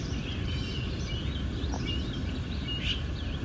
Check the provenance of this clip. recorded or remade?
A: recorded